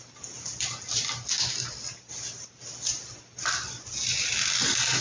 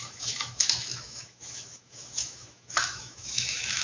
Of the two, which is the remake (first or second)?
second